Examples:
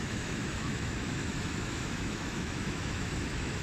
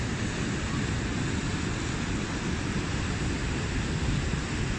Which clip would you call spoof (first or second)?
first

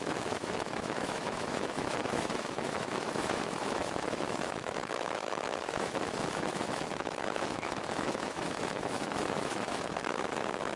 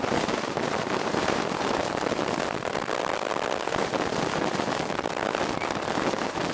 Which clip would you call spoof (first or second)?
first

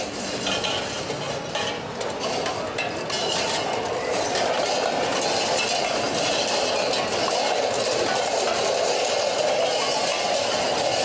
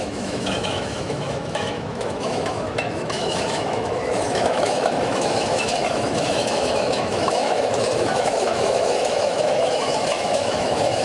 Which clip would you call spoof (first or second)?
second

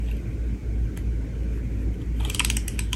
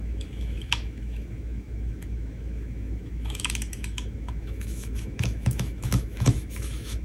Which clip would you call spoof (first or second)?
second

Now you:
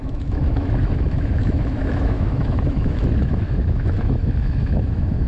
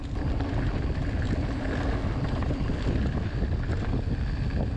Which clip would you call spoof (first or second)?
first